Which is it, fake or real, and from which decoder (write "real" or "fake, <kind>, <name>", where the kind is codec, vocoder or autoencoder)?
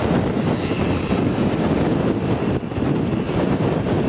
real